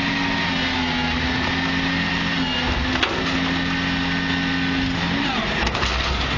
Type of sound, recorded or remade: recorded